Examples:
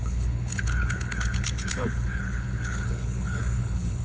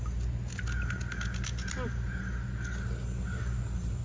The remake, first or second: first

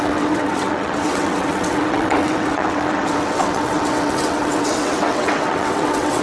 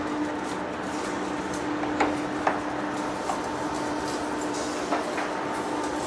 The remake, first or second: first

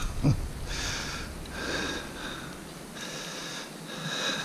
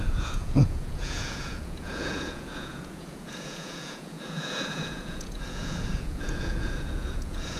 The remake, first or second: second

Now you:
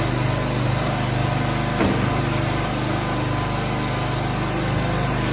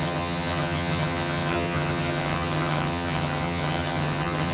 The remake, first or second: second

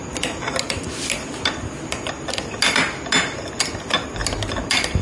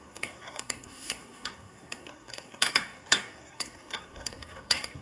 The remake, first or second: second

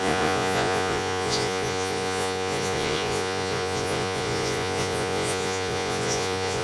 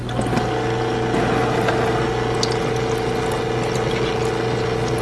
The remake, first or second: first